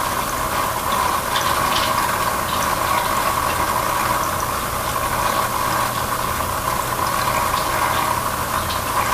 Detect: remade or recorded recorded